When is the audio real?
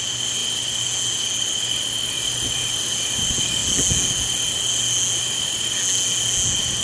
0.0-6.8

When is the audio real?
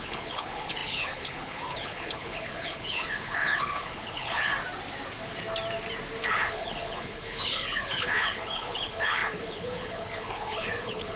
4.5-6.2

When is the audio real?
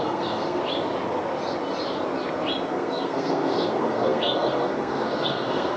0.6-2.7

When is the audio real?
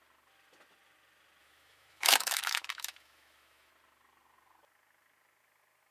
0.0-1.4; 3.7-5.9